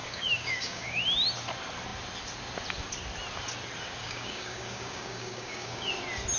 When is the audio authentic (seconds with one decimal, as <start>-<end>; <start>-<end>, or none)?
1.0-4.0; 5.9-6.4